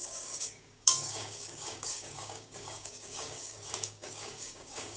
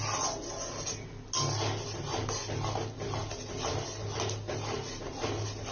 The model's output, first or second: first